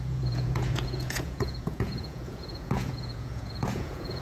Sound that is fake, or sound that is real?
fake